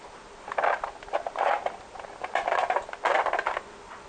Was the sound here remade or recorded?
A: recorded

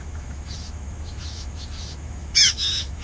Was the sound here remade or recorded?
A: remade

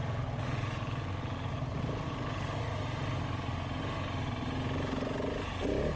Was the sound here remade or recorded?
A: recorded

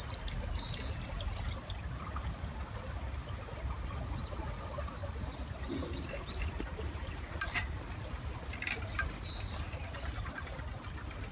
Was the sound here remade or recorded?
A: recorded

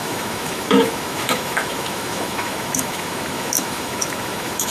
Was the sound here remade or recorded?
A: remade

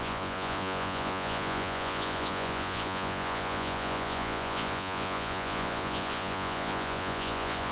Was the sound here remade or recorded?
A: remade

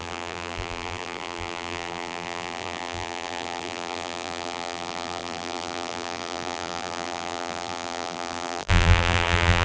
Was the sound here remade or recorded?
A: remade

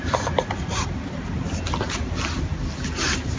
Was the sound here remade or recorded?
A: recorded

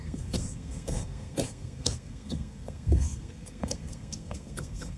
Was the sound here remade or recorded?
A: remade